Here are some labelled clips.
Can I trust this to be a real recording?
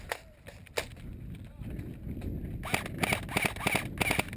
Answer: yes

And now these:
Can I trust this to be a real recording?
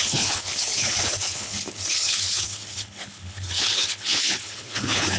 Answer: no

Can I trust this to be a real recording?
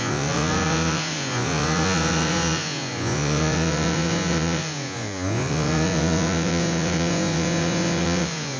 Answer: no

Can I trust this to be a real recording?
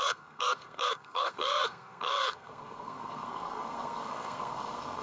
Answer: no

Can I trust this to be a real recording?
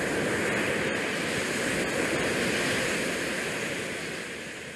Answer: yes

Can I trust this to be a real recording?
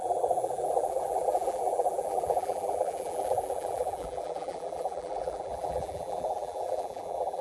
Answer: no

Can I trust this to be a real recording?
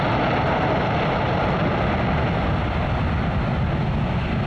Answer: yes